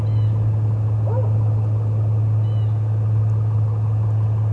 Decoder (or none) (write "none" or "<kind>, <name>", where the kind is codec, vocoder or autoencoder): none